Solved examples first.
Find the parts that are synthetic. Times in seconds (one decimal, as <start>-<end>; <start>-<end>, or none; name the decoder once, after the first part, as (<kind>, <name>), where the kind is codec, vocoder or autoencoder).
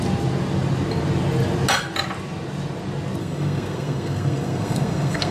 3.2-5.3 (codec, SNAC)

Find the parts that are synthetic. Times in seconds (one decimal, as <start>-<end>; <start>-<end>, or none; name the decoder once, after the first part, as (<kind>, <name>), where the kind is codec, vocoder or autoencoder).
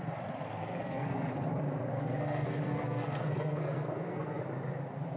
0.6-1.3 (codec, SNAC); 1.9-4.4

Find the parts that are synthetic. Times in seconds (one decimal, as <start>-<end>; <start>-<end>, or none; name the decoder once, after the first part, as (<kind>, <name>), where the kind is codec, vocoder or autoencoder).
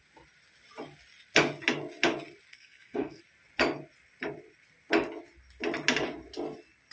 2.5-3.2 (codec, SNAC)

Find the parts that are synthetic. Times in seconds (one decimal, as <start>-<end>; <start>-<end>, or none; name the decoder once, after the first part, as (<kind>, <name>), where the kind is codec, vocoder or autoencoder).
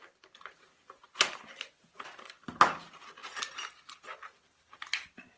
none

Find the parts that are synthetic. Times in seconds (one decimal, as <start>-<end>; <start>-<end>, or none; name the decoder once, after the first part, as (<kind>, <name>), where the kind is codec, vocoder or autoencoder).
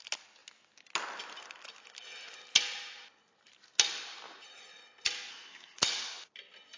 5.3-5.8 (codec, SNAC)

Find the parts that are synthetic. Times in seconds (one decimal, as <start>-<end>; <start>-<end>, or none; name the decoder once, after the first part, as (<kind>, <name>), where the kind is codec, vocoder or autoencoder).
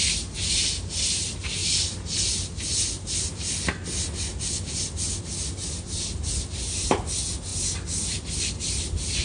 none